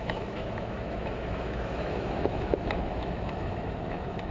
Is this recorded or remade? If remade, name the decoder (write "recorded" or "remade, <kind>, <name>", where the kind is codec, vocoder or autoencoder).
remade, autoencoder, DAC-VAE